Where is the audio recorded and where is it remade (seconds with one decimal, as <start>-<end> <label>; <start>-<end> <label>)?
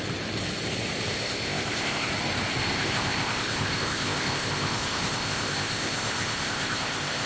0.0-1.1 recorded; 1.1-2.1 remade; 2.1-2.6 recorded; 2.6-7.3 remade